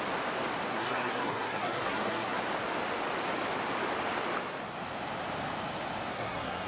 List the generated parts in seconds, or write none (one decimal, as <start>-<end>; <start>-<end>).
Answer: 0.7-2.4; 6.1-6.7

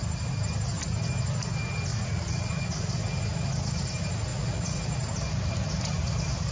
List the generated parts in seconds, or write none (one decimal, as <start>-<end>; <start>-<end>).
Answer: 1.9-2.9; 4.3-4.8